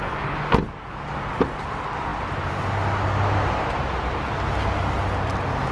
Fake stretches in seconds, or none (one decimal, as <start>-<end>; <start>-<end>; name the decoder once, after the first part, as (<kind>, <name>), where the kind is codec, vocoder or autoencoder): none